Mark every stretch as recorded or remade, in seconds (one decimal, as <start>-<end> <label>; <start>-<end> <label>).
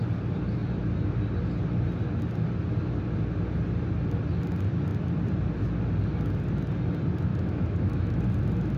0.0-7.3 recorded; 7.3-8.2 remade; 8.2-8.8 recorded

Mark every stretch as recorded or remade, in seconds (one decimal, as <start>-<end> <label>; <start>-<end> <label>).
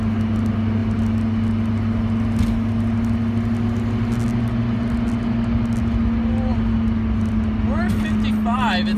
0.0-9.0 recorded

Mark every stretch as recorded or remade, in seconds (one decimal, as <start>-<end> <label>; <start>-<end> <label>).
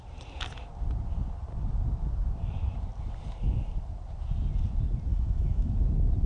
0.0-5.1 recorded; 5.1-5.7 remade; 5.7-6.3 recorded